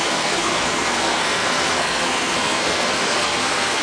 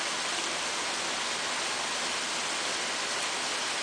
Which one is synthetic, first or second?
first